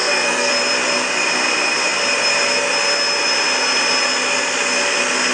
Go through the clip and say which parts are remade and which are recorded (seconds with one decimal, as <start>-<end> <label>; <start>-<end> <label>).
0.0-0.5 remade; 0.5-5.3 recorded